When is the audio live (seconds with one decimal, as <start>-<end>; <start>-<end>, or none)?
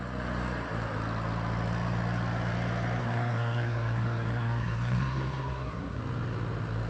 0.0-3.0; 6.0-6.9